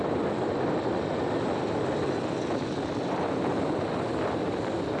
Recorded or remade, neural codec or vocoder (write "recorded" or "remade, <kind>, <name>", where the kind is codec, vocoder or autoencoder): recorded